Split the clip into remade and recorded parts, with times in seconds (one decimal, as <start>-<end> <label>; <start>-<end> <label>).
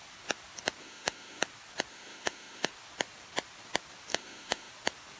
0.0-0.8 recorded; 0.8-1.4 remade; 1.4-1.9 recorded; 1.9-2.7 remade; 2.7-4.1 recorded; 4.1-4.7 remade; 4.7-5.2 recorded